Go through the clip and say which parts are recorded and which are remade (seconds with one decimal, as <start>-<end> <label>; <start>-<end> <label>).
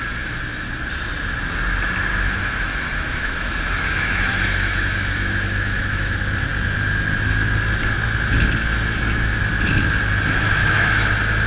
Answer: 0.0-2.1 recorded; 2.1-6.1 remade; 6.1-10.6 recorded; 10.6-11.1 remade; 11.1-11.5 recorded